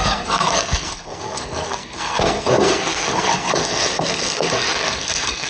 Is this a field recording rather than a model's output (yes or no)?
no